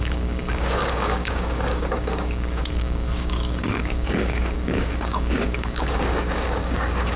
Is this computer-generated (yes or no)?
yes